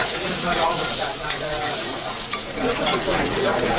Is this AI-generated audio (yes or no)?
yes